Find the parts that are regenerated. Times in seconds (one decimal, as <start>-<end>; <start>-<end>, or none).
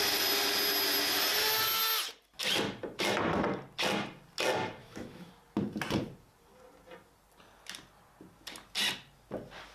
4.8-5.3